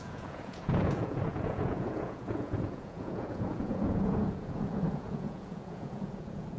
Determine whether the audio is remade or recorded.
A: remade